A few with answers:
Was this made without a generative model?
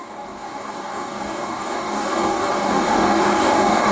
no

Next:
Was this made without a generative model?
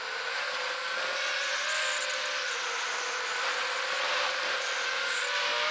yes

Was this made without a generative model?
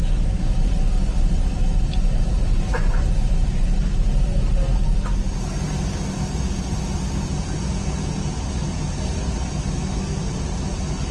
yes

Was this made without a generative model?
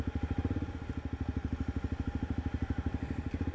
yes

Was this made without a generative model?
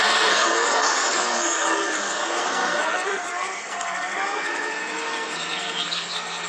no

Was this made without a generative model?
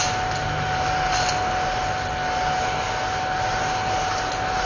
yes